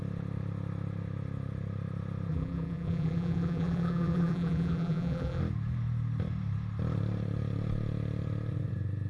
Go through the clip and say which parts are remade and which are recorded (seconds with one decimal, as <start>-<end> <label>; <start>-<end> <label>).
0.0-2.3 recorded; 2.3-5.4 remade; 5.4-9.1 recorded